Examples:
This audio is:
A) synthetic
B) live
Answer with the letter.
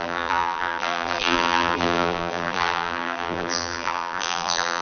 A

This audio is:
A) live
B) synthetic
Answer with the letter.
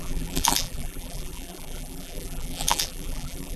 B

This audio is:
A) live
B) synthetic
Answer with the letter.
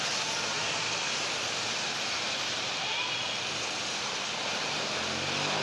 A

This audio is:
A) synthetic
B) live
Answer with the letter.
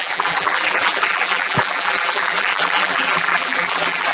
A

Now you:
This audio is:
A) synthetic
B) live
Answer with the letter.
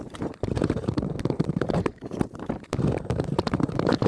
A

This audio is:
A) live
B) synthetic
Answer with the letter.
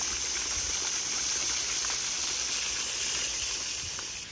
A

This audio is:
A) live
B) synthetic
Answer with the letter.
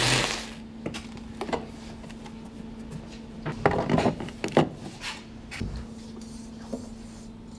A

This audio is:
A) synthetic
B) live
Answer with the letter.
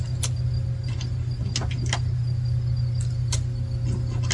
B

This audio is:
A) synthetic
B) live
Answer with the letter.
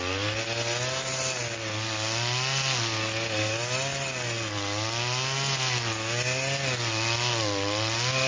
B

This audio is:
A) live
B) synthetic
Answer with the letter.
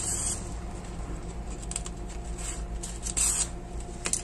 A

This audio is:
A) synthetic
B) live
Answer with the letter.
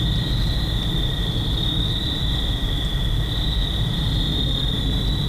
B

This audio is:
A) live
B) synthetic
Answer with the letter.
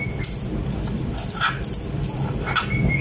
B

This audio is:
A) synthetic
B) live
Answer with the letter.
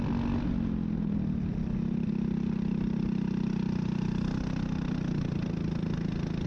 B